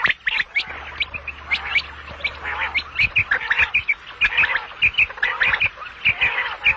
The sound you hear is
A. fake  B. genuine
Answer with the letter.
B